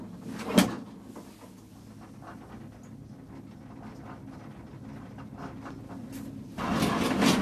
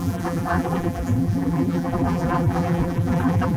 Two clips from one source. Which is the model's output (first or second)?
second